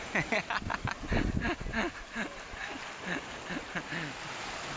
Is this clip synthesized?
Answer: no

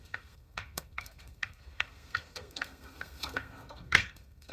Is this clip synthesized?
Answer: yes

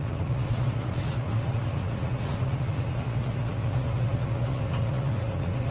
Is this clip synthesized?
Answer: yes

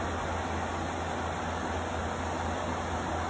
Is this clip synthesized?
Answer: no